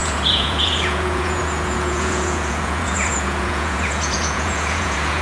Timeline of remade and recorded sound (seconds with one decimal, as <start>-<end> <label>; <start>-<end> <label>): 0.0-5.2 remade